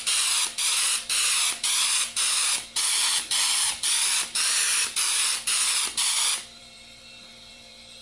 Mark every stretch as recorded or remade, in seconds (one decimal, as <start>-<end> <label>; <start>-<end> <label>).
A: 0.0-3.0 recorded; 3.0-8.0 remade